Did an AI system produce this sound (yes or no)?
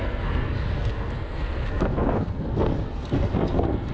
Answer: yes